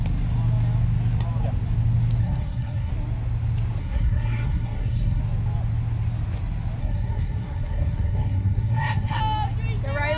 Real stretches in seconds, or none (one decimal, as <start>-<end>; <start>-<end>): 0.0-2.2; 2.9-3.8; 5.2-6.8; 9.2-10.2